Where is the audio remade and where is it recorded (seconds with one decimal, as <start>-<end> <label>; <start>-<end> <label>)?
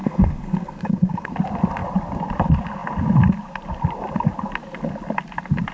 0.0-1.3 remade; 1.3-5.7 recorded